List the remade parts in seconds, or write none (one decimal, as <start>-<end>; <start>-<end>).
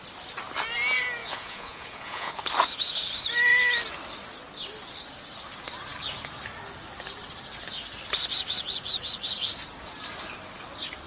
1.2-2.3